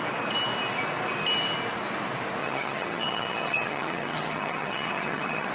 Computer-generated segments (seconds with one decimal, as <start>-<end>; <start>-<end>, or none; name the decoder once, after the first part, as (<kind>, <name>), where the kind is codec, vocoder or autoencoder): 2.4-5.5 (vocoder, HiFi-GAN)